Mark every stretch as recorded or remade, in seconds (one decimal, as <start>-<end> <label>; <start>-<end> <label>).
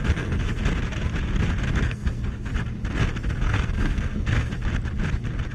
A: 0.0-0.6 remade; 0.6-1.8 recorded; 1.8-2.5 remade; 2.5-3.4 recorded; 3.4-4.5 remade; 4.5-5.5 recorded